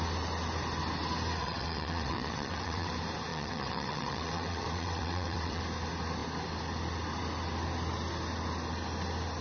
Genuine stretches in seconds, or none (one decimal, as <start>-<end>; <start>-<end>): 0.0-1.4; 2.9-3.3; 5.6-9.4